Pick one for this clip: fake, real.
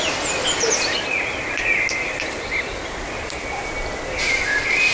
real